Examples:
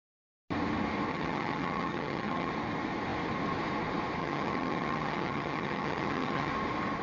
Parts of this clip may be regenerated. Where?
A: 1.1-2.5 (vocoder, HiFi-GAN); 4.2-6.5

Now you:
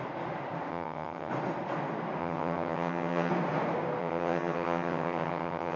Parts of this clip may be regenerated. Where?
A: 0.7-1.3 (vocoder, HiFi-GAN); 2.2-3.3; 4.0-5.8

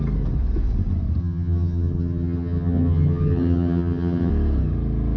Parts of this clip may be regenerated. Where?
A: 1.2-4.3 (vocoder, HiFi-GAN)

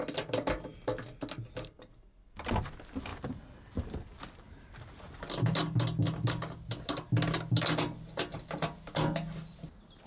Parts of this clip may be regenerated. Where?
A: none

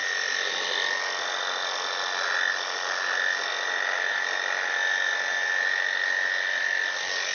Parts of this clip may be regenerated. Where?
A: none

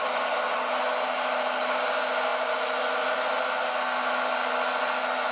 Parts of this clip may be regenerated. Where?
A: none